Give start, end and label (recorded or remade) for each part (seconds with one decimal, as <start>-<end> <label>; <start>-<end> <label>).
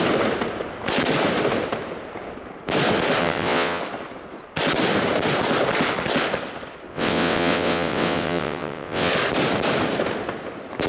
0.0-3.2 recorded; 3.2-3.8 remade; 3.8-6.9 recorded; 6.9-9.1 remade; 9.1-10.9 recorded